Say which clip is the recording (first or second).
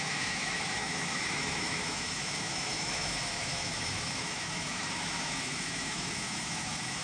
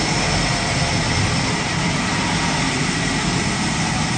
second